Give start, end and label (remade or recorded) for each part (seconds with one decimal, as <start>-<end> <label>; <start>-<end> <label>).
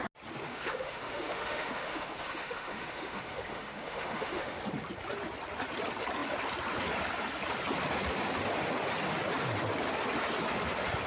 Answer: 0.0-0.5 recorded; 0.5-4.6 remade; 4.6-11.1 recorded